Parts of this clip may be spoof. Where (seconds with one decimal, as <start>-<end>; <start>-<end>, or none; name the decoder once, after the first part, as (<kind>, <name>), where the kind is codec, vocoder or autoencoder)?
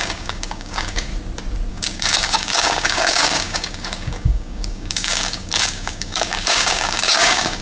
0.0-1.1 (codec, DAC); 1.7-7.6